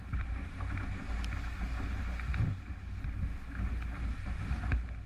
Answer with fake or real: real